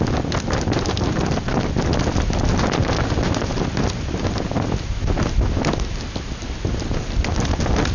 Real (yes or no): yes